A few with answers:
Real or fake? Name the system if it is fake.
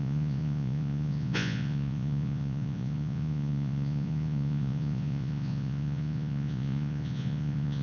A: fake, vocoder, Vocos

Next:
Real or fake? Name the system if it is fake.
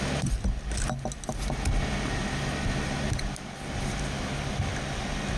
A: real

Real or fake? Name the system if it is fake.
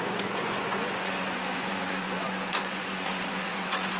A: fake, vocoder, Vocos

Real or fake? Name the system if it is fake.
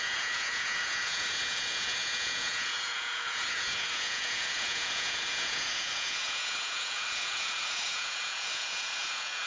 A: fake, vocoder, Vocos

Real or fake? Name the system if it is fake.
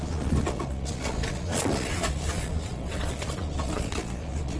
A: fake, vocoder, Vocos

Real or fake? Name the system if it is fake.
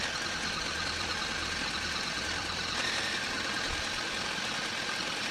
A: real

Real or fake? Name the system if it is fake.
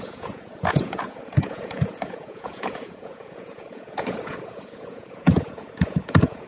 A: fake, vocoder, Vocos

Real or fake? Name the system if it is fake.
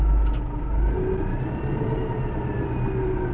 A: real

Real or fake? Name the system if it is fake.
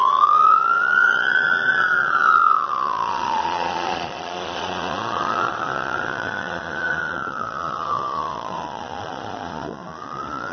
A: fake, vocoder, Vocos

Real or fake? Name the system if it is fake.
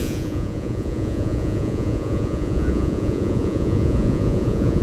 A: fake, vocoder, Vocos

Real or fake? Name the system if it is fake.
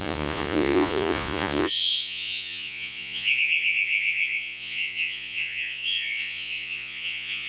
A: fake, vocoder, Vocos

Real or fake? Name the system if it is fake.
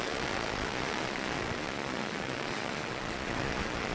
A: fake, vocoder, Vocos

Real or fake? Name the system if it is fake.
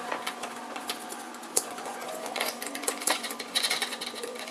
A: fake, vocoder, Vocos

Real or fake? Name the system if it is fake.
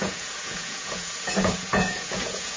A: fake, vocoder, Vocos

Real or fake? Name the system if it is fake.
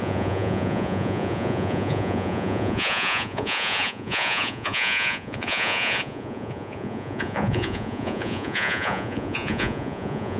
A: fake, vocoder, Vocos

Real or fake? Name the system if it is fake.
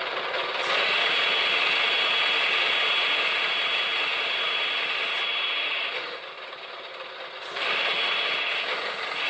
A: real